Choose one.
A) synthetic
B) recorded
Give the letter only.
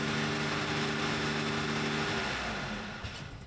B